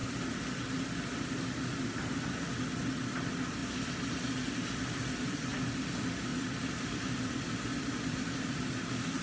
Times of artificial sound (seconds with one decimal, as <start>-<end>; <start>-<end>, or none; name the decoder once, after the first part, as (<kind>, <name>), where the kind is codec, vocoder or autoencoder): 6.3-7.2 (vocoder, BigVGAN v2)